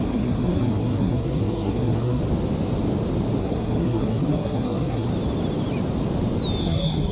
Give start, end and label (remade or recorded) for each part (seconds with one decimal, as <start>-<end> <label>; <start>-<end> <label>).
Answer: 0.0-2.2 remade; 2.2-3.4 recorded; 3.4-5.1 remade; 5.1-6.6 recorded; 6.6-7.1 remade